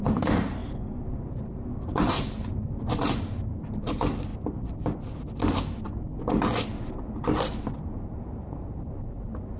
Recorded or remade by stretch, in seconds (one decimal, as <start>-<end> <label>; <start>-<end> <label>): 0.0-0.6 remade; 0.6-1.4 recorded; 1.4-4.3 remade; 4.3-7.0 recorded; 7.0-9.6 remade